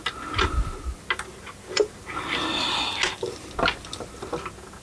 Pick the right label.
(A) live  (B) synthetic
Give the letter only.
A